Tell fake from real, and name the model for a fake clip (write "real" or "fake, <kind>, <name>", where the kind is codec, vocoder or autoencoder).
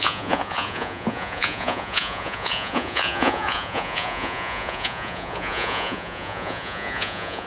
fake, vocoder, Vocos